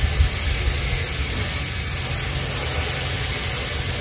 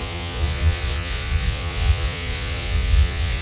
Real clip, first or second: first